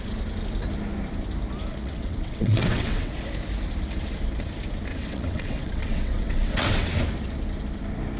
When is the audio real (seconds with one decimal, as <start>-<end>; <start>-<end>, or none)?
0.0-1.8; 3.1-4.9; 7.0-8.2